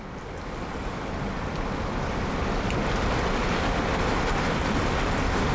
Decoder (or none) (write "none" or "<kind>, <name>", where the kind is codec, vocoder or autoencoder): none